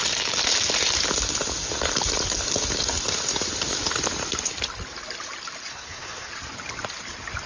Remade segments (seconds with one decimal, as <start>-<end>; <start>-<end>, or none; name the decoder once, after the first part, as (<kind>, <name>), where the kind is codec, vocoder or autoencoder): 5.7-6.3 (codec, SNAC)